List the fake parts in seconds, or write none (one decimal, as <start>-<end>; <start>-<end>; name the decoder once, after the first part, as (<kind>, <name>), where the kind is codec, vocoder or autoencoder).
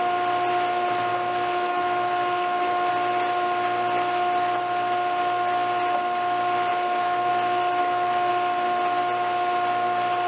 1.1-2.9 (autoencoder, DAC-VAE); 6.7-7.3; 7.8-8.3